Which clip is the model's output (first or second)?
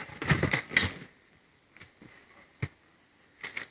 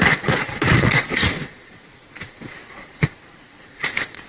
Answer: second